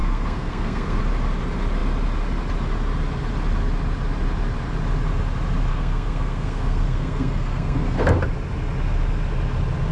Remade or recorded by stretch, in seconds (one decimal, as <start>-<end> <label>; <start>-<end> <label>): 0.0-1.0 remade; 1.0-5.7 recorded; 5.7-8.2 remade; 8.2-9.9 recorded